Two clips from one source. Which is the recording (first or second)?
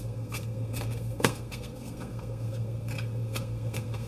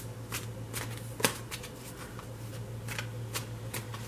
second